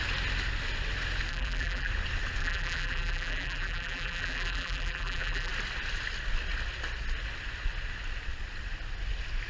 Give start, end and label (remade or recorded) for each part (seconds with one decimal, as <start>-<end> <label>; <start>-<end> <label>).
0.0-1.3 recorded; 1.3-1.9 remade; 1.9-2.4 recorded; 2.4-5.5 remade; 5.5-9.5 recorded